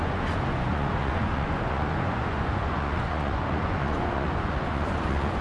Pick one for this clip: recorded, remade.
remade